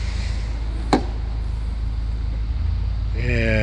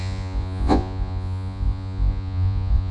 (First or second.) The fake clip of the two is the second